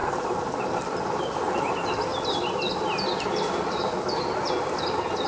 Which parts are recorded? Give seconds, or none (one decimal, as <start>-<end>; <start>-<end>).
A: 0.7-5.3